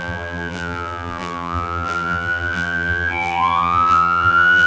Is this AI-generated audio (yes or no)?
yes